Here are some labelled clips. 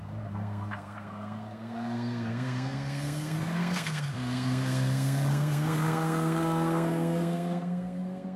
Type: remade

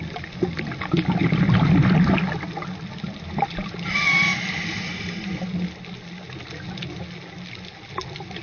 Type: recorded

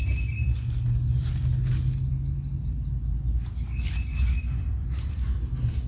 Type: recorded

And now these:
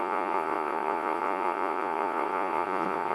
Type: remade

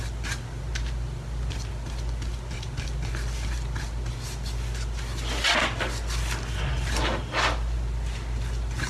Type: recorded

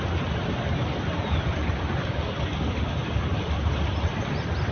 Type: recorded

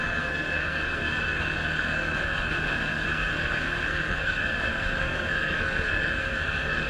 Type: remade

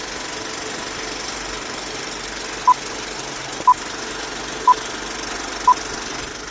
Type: recorded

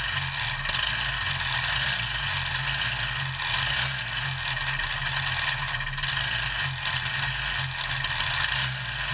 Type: recorded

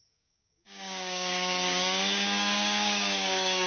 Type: remade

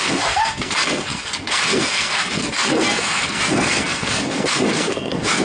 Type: remade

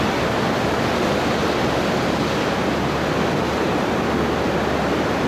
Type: recorded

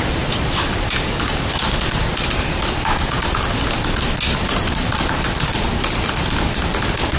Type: recorded